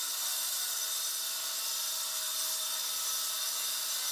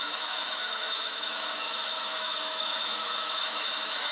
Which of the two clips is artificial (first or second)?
second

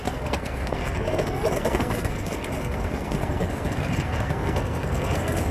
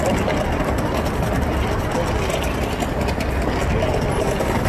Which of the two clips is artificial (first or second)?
first